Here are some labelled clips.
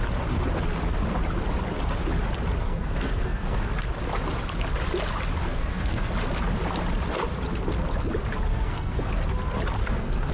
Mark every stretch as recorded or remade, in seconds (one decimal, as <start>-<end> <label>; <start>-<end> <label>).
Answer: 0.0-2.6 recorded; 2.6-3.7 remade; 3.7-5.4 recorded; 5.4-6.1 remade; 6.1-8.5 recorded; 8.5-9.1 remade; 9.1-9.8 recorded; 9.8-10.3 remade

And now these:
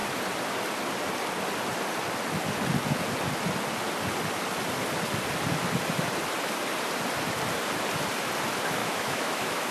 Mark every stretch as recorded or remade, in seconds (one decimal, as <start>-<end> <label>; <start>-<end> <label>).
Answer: 0.0-8.8 recorded; 8.8-9.7 remade

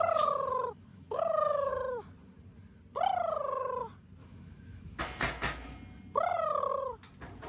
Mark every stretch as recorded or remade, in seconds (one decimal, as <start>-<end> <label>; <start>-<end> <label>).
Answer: 0.0-0.9 recorded; 0.9-1.7 remade; 1.7-4.2 recorded; 4.2-5.0 remade; 5.0-7.5 recorded

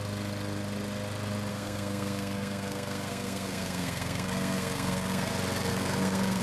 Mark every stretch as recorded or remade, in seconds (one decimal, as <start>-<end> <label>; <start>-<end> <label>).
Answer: 0.0-1.5 recorded; 1.5-5.3 remade; 5.3-5.7 recorded; 5.7-6.4 remade

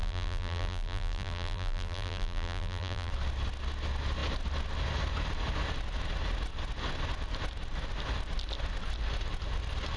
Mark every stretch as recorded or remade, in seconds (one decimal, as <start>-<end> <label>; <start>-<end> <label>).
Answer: 0.0-3.1 remade; 3.1-10.0 recorded

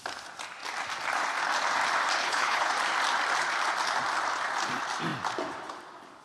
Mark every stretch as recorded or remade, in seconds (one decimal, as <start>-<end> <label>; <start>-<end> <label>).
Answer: 0.0-2.2 recorded; 2.2-2.7 remade; 2.7-6.2 recorded

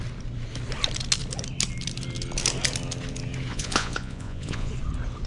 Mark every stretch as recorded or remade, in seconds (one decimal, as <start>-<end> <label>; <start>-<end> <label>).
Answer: 0.0-3.5 recorded; 3.5-4.7 remade; 4.7-5.3 recorded